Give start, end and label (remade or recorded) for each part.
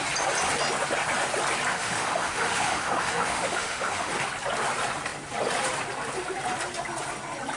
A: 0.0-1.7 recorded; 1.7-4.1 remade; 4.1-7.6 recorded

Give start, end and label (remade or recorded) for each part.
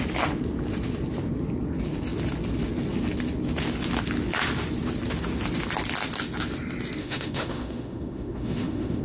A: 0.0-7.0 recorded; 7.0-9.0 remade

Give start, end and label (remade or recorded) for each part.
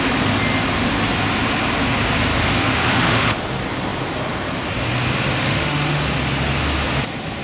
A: 0.0-2.3 recorded; 2.3-3.4 remade; 3.4-5.4 recorded; 5.4-5.9 remade; 5.9-7.4 recorded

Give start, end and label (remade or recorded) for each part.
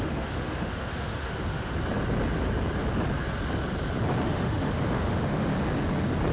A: 0.0-1.7 remade; 1.7-4.3 recorded; 4.3-5.5 remade; 5.5-6.3 recorded